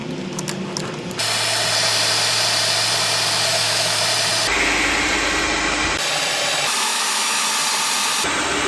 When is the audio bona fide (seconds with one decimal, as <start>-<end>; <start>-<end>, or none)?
0.0-3.5; 4.0-6.9; 7.4-8.7